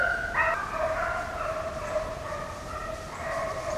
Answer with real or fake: fake